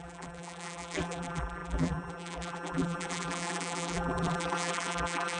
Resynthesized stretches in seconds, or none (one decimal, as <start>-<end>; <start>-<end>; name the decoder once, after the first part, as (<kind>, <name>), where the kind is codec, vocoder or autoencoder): 0.0-5.4 (vocoder, BigVGAN v2)